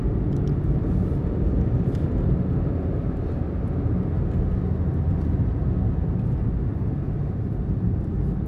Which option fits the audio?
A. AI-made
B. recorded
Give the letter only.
B